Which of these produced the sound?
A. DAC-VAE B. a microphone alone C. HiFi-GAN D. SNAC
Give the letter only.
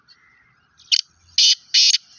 B